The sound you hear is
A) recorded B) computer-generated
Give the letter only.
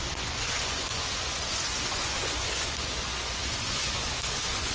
B